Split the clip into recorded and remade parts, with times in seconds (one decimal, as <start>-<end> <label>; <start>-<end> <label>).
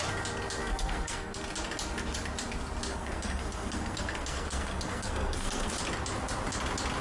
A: 0.0-0.6 recorded; 0.6-1.4 remade; 1.4-2.9 recorded; 2.9-5.7 remade; 5.7-7.0 recorded